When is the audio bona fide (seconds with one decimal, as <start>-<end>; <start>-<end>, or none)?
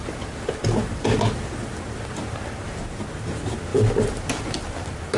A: 0.0-5.2